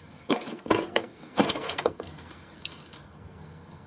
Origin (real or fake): fake